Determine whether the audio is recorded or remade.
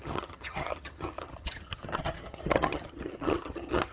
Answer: remade